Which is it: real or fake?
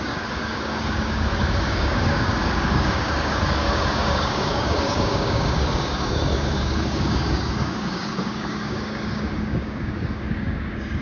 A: fake